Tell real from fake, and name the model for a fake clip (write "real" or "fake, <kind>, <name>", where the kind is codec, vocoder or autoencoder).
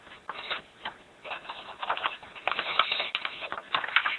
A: real